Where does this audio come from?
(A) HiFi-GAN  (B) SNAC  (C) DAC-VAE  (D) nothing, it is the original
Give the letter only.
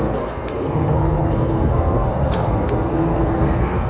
B